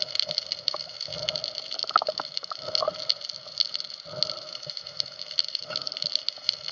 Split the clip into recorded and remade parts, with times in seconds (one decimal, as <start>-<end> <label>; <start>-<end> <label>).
0.0-1.1 remade; 1.1-1.9 recorded; 1.9-2.8 remade; 2.8-4.4 recorded; 4.4-6.7 remade